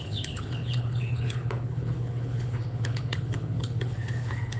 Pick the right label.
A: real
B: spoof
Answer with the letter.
B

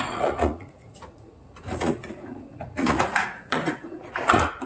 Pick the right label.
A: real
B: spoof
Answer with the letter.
B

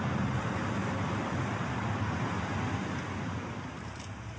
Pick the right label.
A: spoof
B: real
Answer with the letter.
B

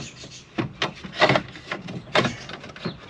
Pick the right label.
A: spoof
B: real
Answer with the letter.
B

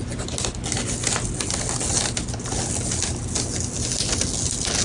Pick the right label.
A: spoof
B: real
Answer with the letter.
B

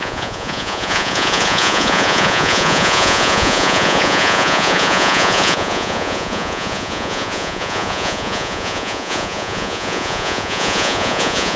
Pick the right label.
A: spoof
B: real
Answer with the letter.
A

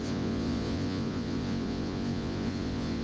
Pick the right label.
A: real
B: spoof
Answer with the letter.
B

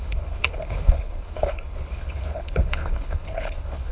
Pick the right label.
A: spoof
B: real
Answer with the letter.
A